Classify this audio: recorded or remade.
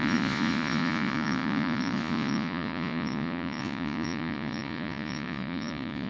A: remade